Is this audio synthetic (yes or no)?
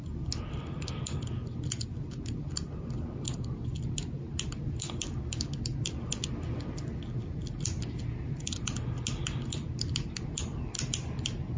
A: no